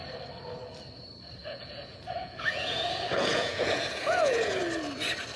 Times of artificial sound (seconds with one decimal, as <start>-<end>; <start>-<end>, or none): 1.4-4.6